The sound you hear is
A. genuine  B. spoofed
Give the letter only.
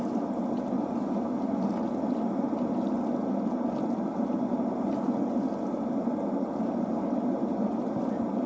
A